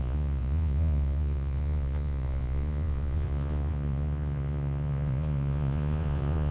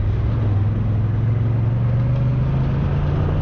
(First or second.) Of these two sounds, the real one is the second